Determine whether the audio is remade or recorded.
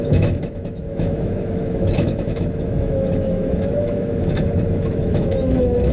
remade